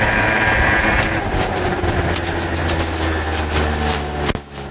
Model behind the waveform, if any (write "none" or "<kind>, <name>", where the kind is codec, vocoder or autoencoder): none